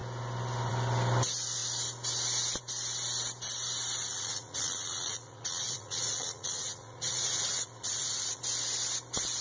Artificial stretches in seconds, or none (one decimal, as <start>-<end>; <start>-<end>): 4.1-8.4